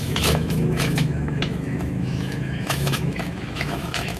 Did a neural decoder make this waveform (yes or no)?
yes